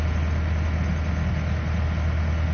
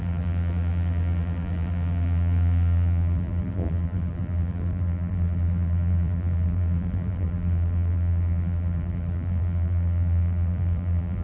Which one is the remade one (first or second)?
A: second